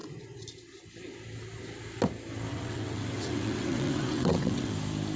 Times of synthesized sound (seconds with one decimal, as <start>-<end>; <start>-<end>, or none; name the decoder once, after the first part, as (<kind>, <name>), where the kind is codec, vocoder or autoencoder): 2.5-4.7 (vocoder, WaveNeXt)